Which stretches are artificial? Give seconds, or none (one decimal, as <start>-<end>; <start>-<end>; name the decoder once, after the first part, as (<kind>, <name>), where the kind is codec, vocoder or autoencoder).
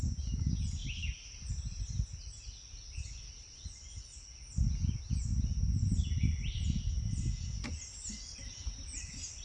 none